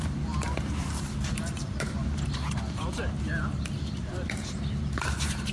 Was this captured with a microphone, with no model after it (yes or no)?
no